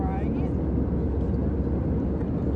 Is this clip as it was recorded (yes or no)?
yes